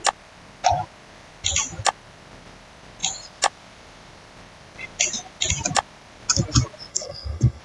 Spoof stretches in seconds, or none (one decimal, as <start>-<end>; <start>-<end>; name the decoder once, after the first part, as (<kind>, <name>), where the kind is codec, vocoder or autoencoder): 6.9-7.6 (codec, SNAC)